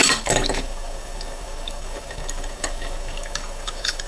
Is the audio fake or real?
fake